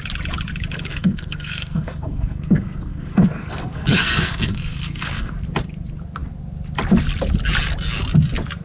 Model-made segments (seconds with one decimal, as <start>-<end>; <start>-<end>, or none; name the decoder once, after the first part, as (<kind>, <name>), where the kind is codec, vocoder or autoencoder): 0.9-5.3 (codec, SNAC)